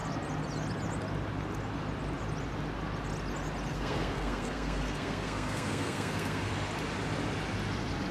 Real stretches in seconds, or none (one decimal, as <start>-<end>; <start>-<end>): 0.0-3.7; 6.5-8.1